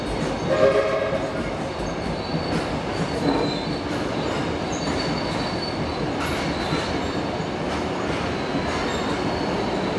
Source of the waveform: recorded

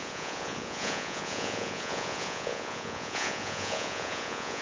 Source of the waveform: remade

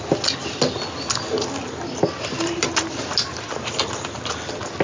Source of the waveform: recorded